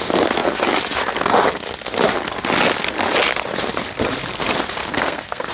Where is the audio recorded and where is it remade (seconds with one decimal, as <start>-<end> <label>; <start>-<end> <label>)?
0.0-4.8 recorded; 4.8-5.5 remade